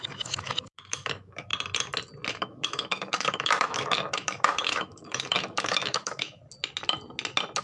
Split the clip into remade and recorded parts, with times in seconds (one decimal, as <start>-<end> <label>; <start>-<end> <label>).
0.0-1.5 remade; 1.5-2.3 recorded; 2.3-6.4 remade; 6.4-7.6 recorded